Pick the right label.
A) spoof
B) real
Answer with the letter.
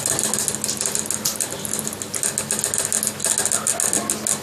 B